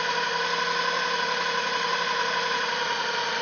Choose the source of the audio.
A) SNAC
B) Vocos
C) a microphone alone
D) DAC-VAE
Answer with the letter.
C